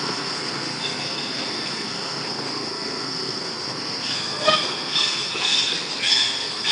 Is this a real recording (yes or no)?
no